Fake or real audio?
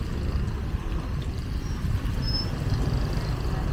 real